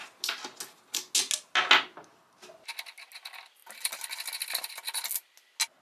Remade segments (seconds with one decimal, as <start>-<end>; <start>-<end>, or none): none